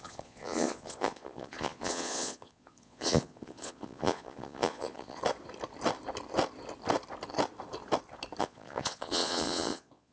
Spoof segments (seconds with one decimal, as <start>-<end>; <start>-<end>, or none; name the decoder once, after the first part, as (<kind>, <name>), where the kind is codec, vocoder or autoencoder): 0.0-5.2 (vocoder, Vocos); 8.4-10.1